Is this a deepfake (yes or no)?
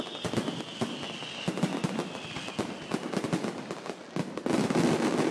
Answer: no